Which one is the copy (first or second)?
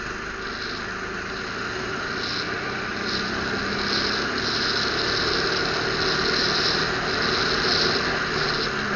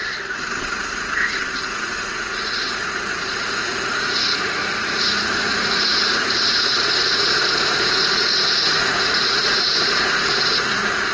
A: second